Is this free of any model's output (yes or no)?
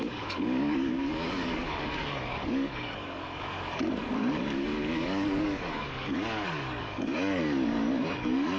no